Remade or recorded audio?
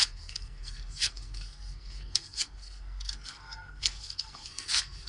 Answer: remade